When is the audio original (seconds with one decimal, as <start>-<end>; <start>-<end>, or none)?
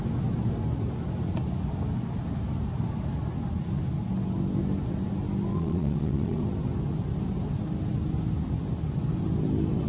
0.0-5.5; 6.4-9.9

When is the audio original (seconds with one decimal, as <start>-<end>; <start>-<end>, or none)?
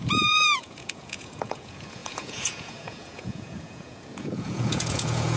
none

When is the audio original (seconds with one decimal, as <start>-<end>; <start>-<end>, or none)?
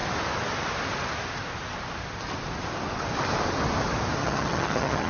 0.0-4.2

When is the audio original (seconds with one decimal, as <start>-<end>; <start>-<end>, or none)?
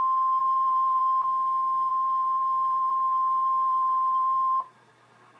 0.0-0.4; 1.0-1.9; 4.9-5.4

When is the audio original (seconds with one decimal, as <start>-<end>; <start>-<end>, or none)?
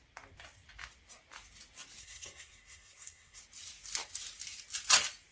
0.0-2.0; 3.4-5.3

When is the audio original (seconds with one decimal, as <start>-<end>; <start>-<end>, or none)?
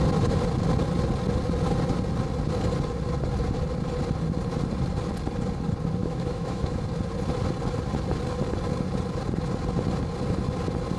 0.0-6.0; 6.8-11.0